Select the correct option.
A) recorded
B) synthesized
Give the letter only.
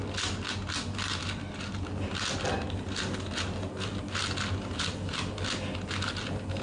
A